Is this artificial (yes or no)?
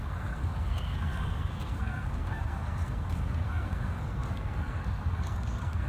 yes